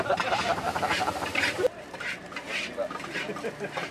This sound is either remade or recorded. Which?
remade